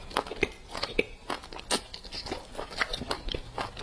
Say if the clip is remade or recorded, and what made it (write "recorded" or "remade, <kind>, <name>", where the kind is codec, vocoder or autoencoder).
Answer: recorded